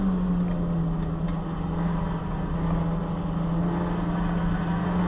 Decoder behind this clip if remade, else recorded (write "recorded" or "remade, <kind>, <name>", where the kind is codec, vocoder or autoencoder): recorded